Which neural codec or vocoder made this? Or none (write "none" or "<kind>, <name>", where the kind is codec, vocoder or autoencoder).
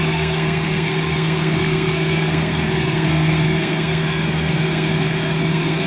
codec, SNAC